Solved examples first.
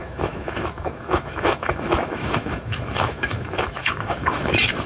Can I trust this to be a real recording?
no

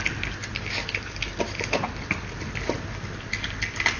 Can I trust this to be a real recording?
yes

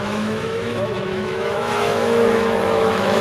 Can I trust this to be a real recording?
no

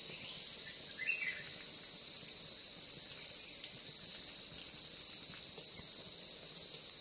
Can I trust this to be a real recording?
yes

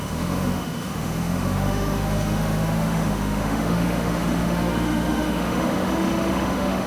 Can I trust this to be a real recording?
no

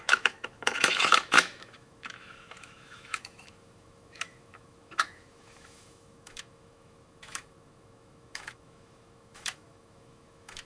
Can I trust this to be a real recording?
no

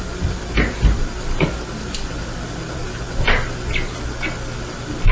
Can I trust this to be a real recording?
yes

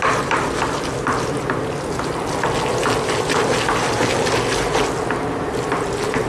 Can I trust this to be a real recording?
yes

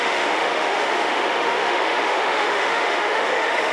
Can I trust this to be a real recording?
no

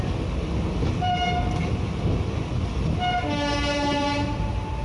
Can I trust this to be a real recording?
yes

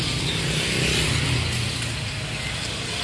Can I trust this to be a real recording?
yes